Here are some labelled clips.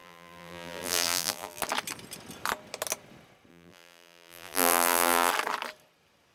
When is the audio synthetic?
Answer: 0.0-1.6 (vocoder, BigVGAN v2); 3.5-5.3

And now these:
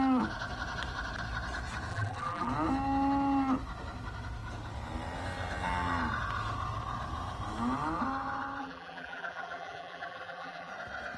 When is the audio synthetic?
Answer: 1.9-2.5 (vocoder, BigVGAN v2); 8.6-10.7

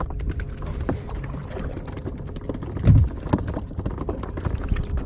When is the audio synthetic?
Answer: 0.0-1.4 (vocoder, BigVGAN v2); 4.3-5.1